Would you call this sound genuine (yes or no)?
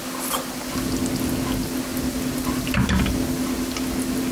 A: yes